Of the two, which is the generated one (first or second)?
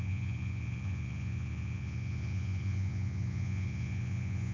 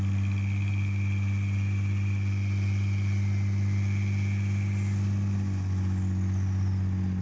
first